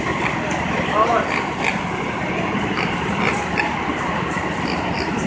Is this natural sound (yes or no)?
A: yes